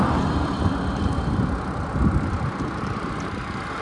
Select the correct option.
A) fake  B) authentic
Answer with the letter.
B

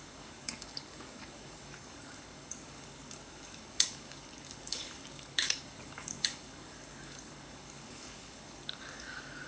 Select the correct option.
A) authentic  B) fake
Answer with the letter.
B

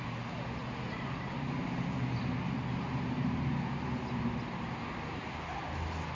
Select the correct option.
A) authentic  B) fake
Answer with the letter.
A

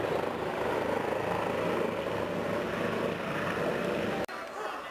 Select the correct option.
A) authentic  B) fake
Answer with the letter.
A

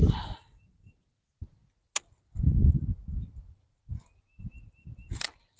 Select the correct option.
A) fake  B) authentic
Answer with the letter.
B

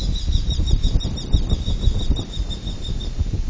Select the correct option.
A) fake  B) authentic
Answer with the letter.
B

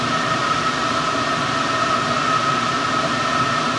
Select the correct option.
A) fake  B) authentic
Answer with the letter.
B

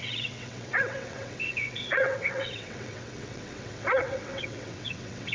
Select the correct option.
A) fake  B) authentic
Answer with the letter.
A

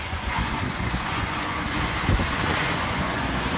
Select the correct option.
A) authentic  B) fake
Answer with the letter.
B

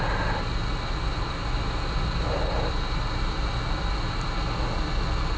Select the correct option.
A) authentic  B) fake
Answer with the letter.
A